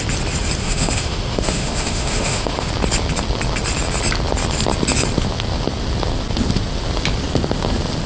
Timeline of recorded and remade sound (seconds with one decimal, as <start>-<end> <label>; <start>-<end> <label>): 0.0-0.6 recorded; 0.6-2.7 remade; 2.7-8.1 recorded